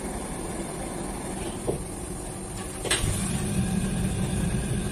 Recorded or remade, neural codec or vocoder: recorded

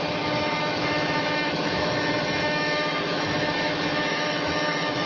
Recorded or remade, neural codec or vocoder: remade, autoencoder, DAC-VAE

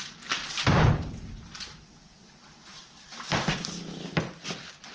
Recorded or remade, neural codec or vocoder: recorded